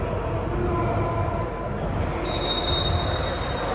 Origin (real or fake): real